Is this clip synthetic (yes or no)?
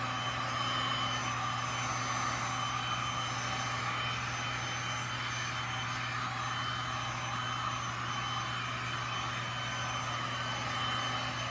no